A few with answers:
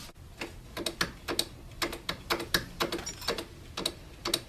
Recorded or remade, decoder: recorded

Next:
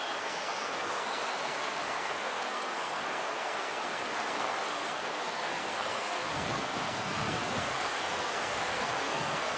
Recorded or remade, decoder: remade, codec, SNAC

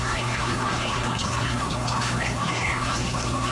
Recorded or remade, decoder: remade, codec, SNAC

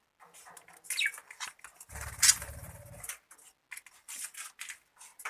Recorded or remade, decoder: recorded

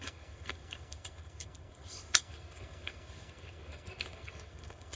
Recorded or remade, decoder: remade, codec, SNAC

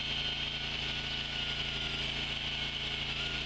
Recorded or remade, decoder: recorded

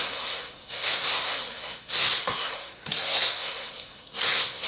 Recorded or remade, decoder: remade, codec, SNAC